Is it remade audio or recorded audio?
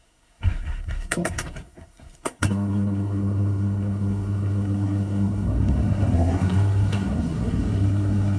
remade